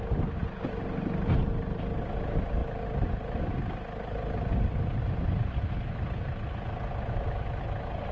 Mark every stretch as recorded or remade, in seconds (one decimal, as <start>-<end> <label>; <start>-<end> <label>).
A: 0.0-8.1 recorded